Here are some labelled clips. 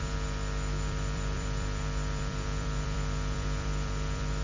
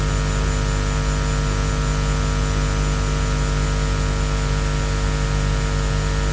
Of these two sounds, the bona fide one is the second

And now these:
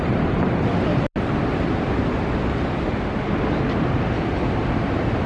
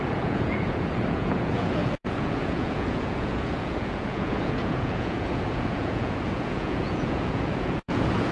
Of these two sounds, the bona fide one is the first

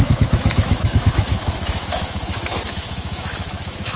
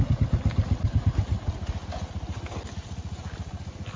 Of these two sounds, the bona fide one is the second